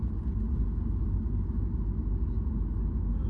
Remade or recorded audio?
recorded